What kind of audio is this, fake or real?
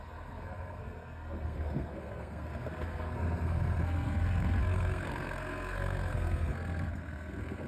fake